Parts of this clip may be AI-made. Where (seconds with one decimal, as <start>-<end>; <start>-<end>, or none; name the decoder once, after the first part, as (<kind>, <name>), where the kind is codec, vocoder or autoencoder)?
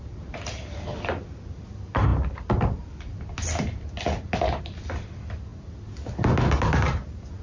none